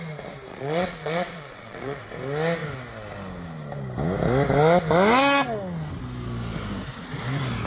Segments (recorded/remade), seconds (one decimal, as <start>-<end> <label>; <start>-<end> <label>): 0.0-0.5 recorded; 0.5-2.0 remade; 2.0-7.7 recorded